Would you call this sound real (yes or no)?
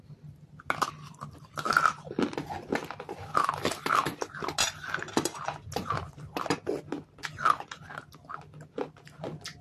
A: yes